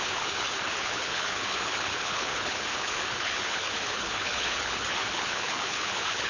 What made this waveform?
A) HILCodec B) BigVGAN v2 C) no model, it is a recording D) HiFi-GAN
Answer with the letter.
A